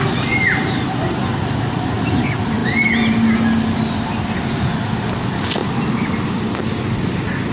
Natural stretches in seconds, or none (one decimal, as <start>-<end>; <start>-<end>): 0.0-7.5